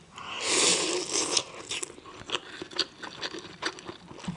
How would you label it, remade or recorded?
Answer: recorded